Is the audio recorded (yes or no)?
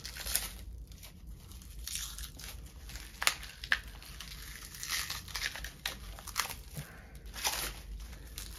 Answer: yes